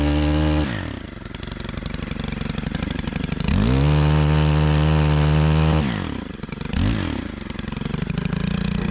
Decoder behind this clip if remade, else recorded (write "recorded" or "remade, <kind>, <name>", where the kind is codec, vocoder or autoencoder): recorded